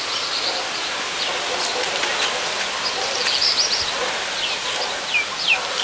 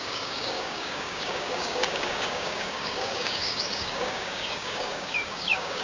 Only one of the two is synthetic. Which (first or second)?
second